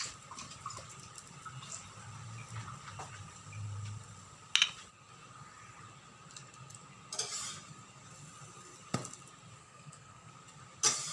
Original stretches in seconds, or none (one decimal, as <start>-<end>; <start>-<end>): 0.0-9.6; 10.3-11.1